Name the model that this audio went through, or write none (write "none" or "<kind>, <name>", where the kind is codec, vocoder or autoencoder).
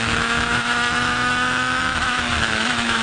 autoencoder, DAC-VAE